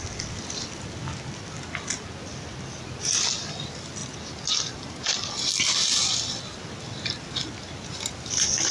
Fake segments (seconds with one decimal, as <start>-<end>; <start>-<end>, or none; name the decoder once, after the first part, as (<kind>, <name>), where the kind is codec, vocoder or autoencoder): none